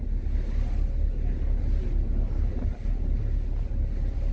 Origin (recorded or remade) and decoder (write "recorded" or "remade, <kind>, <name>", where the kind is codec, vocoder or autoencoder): recorded